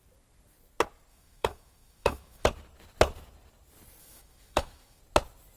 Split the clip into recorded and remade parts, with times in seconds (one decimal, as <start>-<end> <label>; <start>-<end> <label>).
0.0-1.1 recorded; 1.1-2.5 remade; 2.5-4.0 recorded; 4.0-5.0 remade; 5.0-5.6 recorded